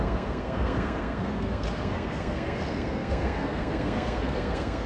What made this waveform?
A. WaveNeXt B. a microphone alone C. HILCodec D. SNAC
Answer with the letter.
D